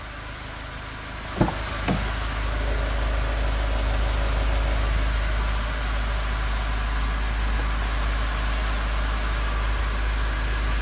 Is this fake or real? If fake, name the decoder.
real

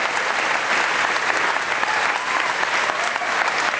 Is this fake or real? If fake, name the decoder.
real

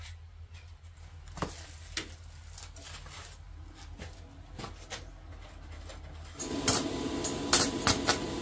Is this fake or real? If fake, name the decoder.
real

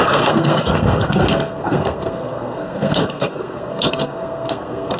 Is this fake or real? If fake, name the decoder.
fake, codec, SNAC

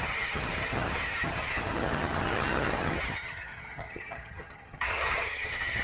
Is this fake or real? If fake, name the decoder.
fake, vocoder, HiFi-GAN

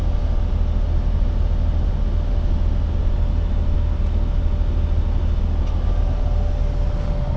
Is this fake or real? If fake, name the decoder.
real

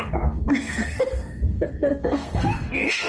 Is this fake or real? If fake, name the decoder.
fake, codec, SNAC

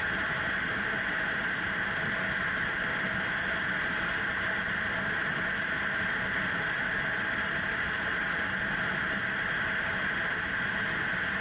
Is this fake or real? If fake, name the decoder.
real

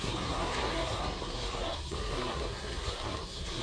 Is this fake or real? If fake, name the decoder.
fake, codec, SNAC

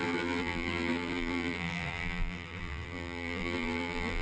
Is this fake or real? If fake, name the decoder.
fake, vocoder, BigVGAN v2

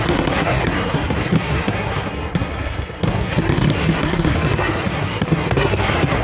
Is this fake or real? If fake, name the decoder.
fake, codec, SNAC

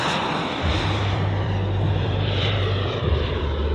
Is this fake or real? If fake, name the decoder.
fake, vocoder, BigVGAN v2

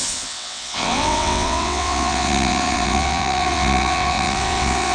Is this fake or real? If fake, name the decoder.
fake, vocoder, WaveNeXt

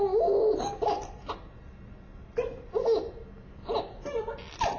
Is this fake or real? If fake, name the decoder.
real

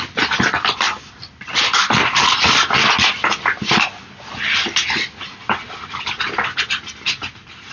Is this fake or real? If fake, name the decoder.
real